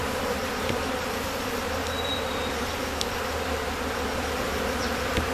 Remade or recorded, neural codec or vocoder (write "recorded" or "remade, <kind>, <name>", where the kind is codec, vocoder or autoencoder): remade, vocoder, BigVGAN v2